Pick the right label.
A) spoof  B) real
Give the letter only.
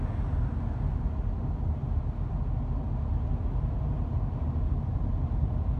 B